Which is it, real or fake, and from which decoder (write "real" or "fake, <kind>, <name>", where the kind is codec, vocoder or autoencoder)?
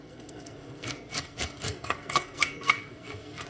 fake, codec, SNAC